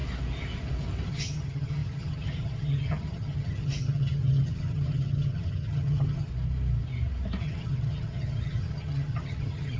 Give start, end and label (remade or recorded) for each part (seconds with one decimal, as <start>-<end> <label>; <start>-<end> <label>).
0.0-1.1 recorded; 1.1-6.3 remade; 6.3-7.4 recorded; 7.4-9.8 remade